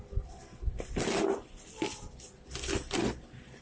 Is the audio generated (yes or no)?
no